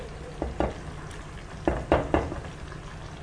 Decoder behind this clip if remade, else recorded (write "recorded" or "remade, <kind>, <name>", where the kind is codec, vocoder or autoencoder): recorded